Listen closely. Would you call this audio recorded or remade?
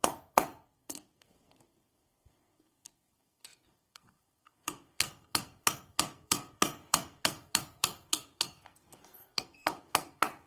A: remade